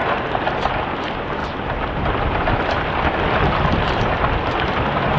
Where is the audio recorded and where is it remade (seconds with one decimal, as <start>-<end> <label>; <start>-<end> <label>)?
0.0-5.2 recorded

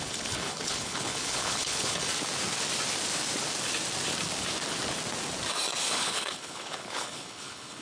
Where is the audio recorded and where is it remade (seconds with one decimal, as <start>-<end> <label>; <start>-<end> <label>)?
0.0-2.1 remade; 2.1-5.9 recorded; 5.9-7.8 remade

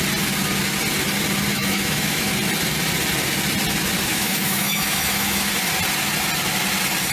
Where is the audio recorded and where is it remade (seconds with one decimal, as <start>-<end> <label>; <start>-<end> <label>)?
0.0-1.5 recorded; 1.5-2.3 remade; 2.3-4.1 recorded; 4.1-5.5 remade; 5.5-7.1 recorded

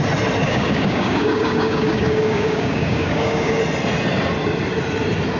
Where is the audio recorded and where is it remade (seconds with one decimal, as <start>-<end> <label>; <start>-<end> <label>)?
0.0-0.4 recorded; 0.4-3.6 remade; 3.6-5.4 recorded

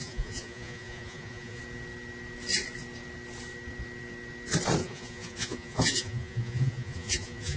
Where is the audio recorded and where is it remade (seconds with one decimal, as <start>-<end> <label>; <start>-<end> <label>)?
0.0-1.6 remade; 1.6-4.8 recorded; 4.8-7.6 remade

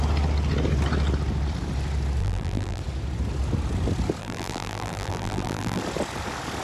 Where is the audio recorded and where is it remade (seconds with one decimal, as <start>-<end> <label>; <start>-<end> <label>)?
0.0-2.2 recorded; 2.2-2.8 remade; 2.8-4.2 recorded; 4.2-5.8 remade; 5.8-6.6 recorded

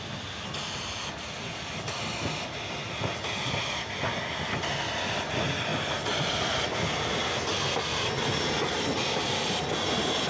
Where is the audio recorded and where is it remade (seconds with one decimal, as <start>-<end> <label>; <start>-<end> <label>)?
0.0-10.3 recorded

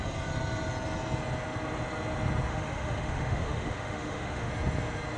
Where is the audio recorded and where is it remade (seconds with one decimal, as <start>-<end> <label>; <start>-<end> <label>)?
0.0-2.5 recorded; 2.5-4.5 remade; 4.5-5.2 recorded